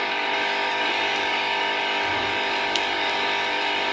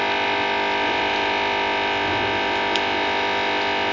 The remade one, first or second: first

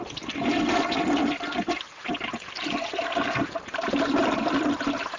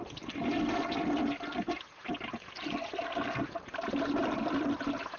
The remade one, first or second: first